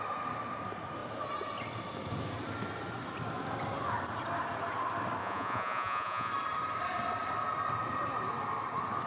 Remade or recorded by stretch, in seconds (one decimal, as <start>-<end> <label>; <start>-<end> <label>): 0.0-5.2 recorded; 5.2-6.3 remade; 6.3-9.1 recorded